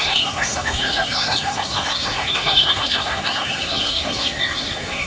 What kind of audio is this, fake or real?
fake